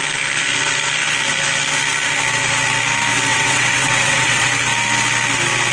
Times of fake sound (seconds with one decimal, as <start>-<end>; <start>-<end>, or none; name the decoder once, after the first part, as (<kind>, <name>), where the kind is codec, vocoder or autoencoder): 3.3-4.5 (vocoder, WaveNeXt)